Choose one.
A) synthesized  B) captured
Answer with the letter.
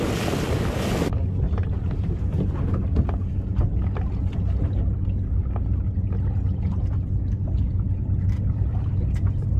B